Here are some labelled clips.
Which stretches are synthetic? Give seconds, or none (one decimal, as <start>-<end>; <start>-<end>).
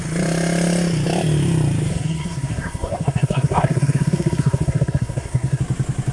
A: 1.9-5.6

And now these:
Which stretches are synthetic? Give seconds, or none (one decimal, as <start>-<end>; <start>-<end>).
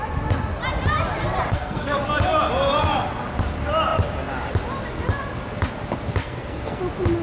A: 1.5-2.0; 6.2-6.8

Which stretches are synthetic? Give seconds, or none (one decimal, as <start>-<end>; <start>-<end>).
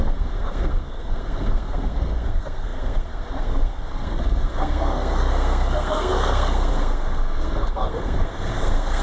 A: 0.0-9.0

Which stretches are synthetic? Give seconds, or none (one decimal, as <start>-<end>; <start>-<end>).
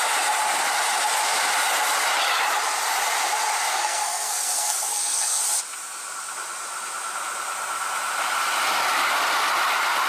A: 3.7-5.4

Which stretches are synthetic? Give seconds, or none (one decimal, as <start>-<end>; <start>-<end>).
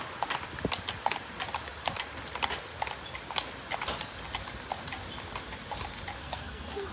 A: 6.2-6.9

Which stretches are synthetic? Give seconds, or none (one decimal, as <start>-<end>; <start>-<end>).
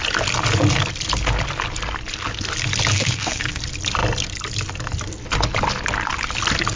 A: 2.9-3.6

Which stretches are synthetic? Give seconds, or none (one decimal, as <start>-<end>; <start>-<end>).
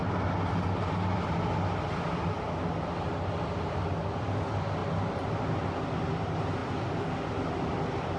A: none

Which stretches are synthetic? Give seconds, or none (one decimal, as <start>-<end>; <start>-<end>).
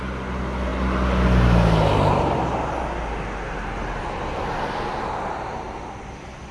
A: none